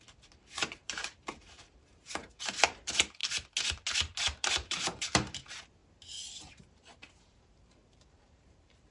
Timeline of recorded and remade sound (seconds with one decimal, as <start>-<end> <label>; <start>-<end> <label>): 0.0-3.2 remade; 3.2-4.2 recorded; 4.2-5.8 remade; 5.8-6.4 recorded; 6.4-8.9 remade